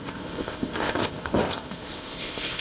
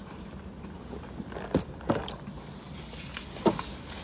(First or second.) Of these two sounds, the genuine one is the second